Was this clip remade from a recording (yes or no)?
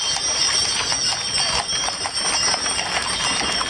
no